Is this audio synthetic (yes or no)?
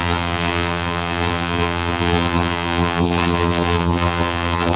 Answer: yes